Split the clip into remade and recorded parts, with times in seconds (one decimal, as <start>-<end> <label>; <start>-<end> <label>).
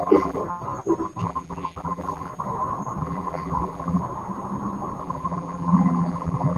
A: 0.0-0.4 remade; 0.4-1.2 recorded; 1.2-2.3 remade; 2.3-3.0 recorded; 3.0-4.0 remade; 4.0-5.0 recorded; 5.0-6.6 remade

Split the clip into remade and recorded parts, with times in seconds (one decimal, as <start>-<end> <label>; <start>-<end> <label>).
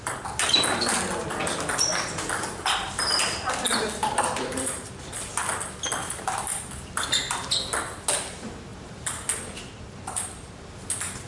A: 0.0-4.0 recorded; 4.0-4.9 remade; 4.9-6.0 recorded; 6.0-6.7 remade; 6.7-8.7 recorded; 8.7-11.3 remade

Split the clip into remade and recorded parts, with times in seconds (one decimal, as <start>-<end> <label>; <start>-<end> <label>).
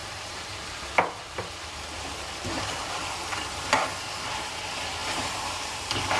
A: 0.0-3.1 remade; 3.1-5.0 recorded; 5.0-5.8 remade; 5.8-6.2 recorded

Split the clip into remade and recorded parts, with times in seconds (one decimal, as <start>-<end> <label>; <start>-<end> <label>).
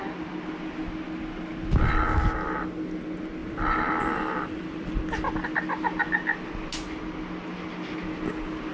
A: 0.0-3.4 recorded; 3.4-4.9 remade; 4.9-8.7 recorded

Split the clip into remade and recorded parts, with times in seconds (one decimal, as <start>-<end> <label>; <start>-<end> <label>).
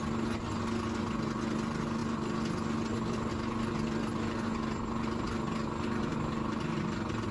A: 0.0-6.1 recorded; 6.1-6.8 remade; 6.8-7.3 recorded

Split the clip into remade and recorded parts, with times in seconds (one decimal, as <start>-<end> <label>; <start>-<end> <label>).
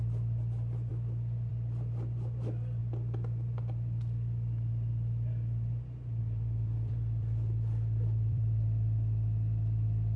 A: 0.0-0.9 remade; 0.9-1.5 recorded; 1.5-10.2 remade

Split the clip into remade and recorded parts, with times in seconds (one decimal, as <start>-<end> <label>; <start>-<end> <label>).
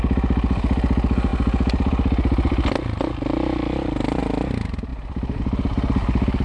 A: 0.0-1.3 recorded; 1.3-4.2 remade; 4.2-6.4 recorded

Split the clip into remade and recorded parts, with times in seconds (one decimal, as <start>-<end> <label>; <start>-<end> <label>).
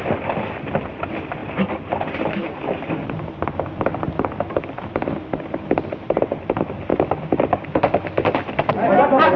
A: 0.0-1.4 recorded; 1.4-5.4 remade; 5.4-6.9 recorded; 6.9-8.7 remade; 8.7-9.4 recorded